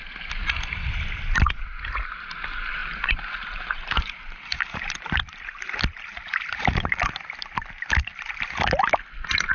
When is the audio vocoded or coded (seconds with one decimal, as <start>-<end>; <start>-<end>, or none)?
2.8-4.9; 5.9-7.1